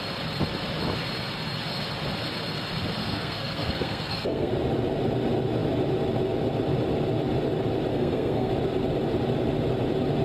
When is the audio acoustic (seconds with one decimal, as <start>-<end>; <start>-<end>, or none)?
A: 0.0-3.0; 4.5-7.9; 8.5-10.2